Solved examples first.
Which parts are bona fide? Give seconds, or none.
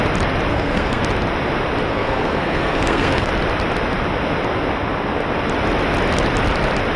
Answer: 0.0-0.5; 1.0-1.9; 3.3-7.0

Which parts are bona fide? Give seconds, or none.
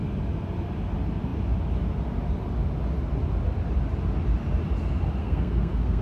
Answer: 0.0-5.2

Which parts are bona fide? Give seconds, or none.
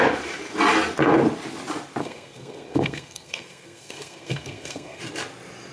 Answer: 0.0-2.0; 5.0-5.7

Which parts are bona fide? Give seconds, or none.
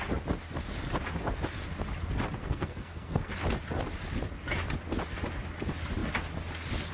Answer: 0.0-2.4; 3.3-6.9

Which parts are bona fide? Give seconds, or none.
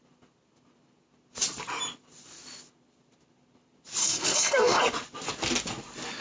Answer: 0.0-4.0; 4.8-6.2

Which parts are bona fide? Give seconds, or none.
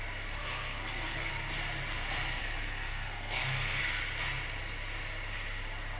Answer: 0.0-0.4; 1.3-2.4; 3.8-6.0